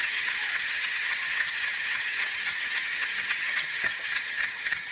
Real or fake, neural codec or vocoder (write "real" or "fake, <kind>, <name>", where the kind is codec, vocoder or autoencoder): fake, vocoder, HiFi-GAN